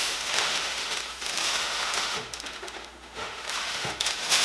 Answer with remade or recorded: remade